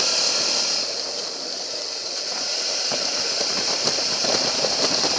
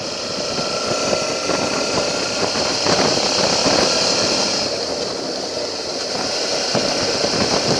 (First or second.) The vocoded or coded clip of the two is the first